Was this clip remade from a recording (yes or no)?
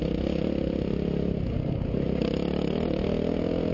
no